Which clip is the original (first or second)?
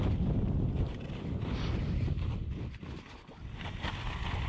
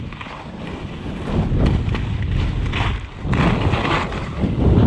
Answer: second